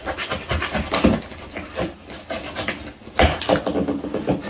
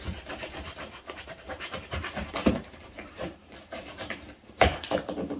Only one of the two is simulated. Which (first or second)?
second